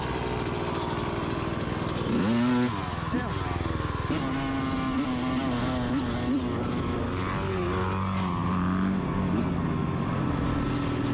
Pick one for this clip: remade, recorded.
recorded